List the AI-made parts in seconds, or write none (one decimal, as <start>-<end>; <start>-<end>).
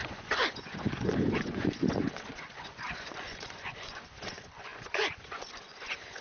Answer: 0.0-6.2